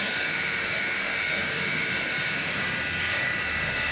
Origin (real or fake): fake